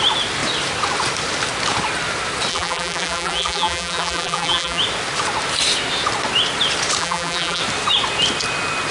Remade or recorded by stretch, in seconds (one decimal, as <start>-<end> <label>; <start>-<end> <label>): 0.0-2.5 recorded; 2.5-4.8 remade; 4.8-7.0 recorded; 7.0-7.6 remade; 7.6-8.9 recorded